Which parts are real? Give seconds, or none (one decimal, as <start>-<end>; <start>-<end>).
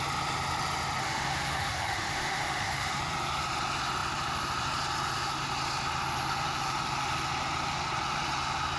0.0-1.0; 3.0-8.8